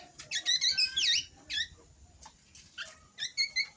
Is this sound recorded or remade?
recorded